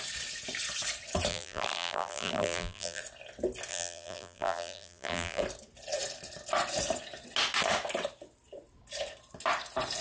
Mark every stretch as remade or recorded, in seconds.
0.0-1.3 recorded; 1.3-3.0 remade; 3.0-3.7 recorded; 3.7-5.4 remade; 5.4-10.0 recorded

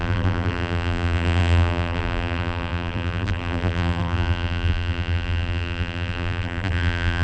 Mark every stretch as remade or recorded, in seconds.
0.0-7.2 remade

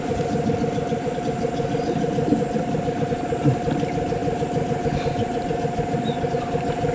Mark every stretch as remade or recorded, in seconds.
0.0-6.9 recorded

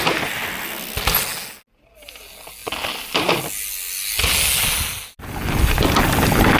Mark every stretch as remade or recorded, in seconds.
0.0-6.6 recorded